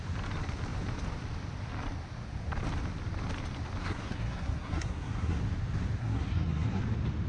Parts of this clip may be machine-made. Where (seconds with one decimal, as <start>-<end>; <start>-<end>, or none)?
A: 3.8-5.4; 6.0-6.8